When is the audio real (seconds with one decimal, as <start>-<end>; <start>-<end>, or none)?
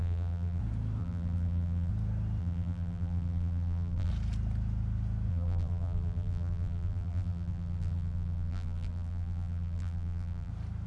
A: 0.6-1.0; 1.9-2.4; 4.1-5.3; 10.5-10.9